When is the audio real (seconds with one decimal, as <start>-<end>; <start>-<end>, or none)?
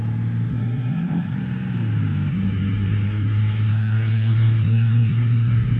0.0-0.5; 1.4-2.3